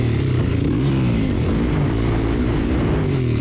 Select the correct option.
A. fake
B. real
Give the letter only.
B